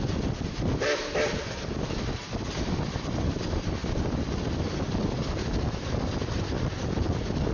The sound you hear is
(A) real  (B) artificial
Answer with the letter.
A